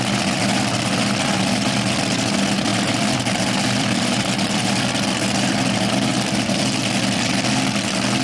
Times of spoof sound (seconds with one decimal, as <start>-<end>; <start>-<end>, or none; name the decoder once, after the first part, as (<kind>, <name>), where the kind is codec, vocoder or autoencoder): 2.7-4.8 (vocoder, BigVGAN v2); 6.1-6.8